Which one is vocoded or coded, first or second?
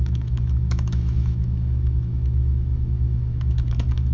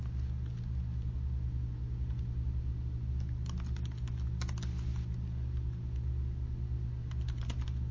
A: first